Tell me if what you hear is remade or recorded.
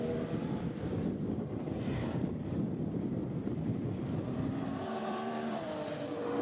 remade